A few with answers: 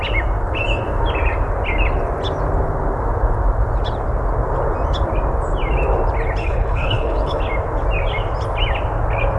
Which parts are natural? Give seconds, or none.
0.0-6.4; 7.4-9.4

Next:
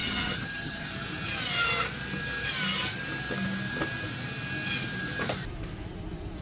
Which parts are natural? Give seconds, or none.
0.9-6.4

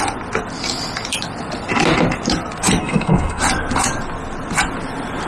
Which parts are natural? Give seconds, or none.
0.0-2.8; 3.4-5.3

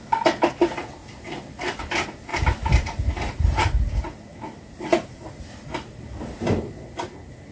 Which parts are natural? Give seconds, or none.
0.0-2.3; 6.8-7.5

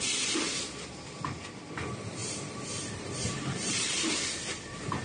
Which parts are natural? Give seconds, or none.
0.0-2.2; 3.9-5.0

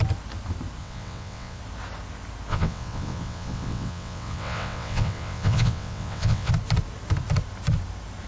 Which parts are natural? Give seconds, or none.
0.0-0.8; 1.6-2.5; 6.5-8.3